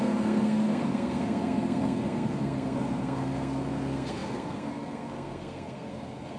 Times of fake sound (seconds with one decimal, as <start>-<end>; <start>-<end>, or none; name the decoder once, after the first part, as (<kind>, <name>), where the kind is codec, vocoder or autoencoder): 0.0-6.4 (codec, SNAC)